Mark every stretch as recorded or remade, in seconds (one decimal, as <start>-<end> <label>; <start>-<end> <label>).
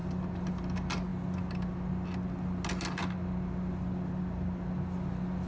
0.0-5.5 recorded